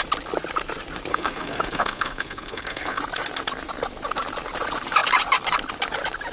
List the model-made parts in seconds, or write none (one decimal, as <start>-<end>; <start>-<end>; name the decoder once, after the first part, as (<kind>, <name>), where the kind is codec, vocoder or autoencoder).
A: 1.1-3.0 (codec, SNAC)